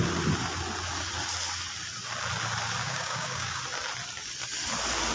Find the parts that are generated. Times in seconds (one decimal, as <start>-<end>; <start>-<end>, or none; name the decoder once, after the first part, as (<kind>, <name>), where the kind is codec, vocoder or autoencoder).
2.8-3.6 (codec, DAC)